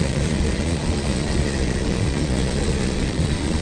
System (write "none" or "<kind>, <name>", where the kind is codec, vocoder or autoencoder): vocoder, Vocos